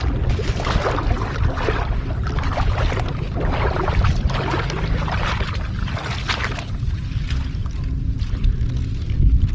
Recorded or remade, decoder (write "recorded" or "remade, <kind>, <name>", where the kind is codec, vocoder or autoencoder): recorded